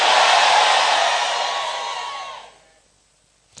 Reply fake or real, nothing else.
real